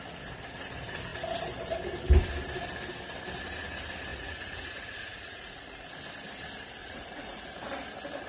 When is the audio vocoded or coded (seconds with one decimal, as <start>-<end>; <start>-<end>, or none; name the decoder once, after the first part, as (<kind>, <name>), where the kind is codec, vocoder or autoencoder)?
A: 4.1-5.9 (vocoder, Vocos); 6.8-7.5